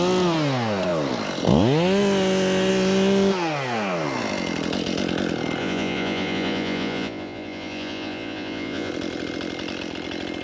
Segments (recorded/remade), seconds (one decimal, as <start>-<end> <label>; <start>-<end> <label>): 0.0-5.6 recorded; 5.6-8.9 remade; 8.9-10.4 recorded